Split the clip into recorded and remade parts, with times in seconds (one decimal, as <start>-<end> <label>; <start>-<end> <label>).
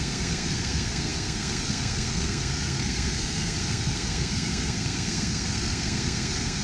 0.0-6.6 remade